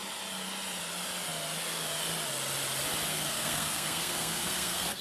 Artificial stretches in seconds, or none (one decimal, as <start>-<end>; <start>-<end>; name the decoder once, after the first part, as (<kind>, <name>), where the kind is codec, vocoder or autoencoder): 3.1-5.0 (codec, SNAC)